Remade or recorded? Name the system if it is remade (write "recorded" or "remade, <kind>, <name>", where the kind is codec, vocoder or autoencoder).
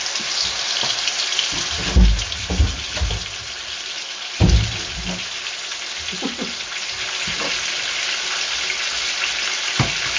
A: recorded